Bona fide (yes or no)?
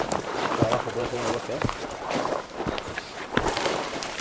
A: no